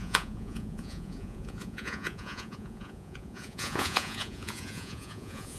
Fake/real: fake